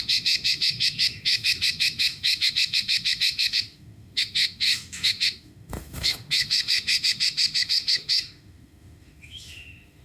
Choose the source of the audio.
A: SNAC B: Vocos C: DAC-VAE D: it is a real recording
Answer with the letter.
C